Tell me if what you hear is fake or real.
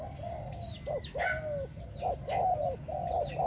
real